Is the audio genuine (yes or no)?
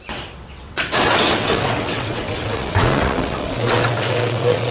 no